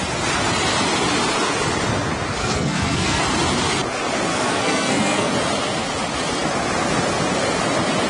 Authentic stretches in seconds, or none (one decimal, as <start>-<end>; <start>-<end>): 0.0-2.4; 3.2-4.3; 5.3-8.1